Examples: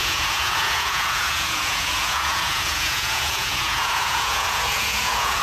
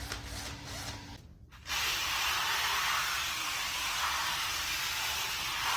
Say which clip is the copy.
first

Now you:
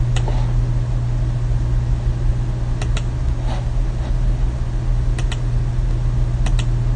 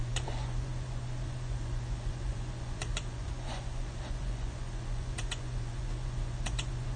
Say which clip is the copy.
second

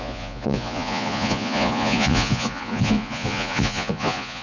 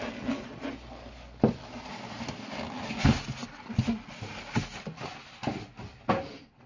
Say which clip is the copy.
first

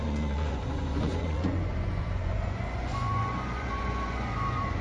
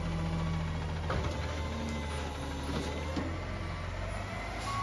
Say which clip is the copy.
first